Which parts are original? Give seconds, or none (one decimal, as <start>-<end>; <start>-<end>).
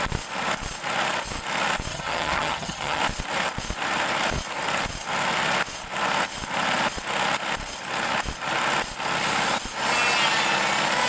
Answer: 0.0-1.9; 3.0-11.1